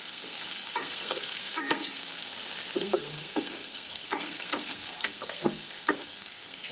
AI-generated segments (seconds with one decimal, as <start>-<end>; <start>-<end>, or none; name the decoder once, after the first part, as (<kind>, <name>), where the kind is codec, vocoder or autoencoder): 0.0-2.3 (codec, SNAC); 2.8-6.7